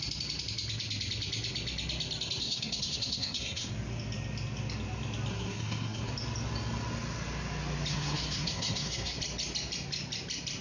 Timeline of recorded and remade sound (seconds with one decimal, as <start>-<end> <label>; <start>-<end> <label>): 0.0-2.4 recorded; 2.4-3.7 remade; 3.7-5.3 recorded; 5.3-6.1 remade; 6.1-7.9 recorded; 7.9-9.2 remade; 9.2-10.6 recorded